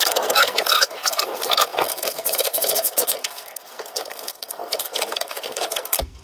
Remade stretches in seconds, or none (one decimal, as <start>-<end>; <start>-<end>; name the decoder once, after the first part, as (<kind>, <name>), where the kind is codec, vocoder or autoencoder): 0.0-6.2 (codec, SNAC)